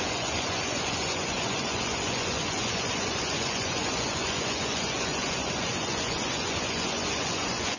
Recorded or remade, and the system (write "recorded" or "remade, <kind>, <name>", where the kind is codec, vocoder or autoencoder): remade, vocoder, Vocos